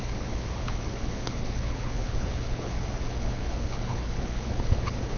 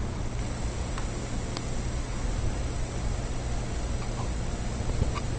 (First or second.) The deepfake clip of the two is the first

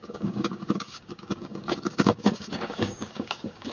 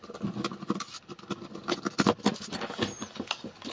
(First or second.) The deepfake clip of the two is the first